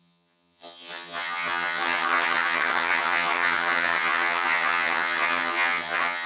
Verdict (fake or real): fake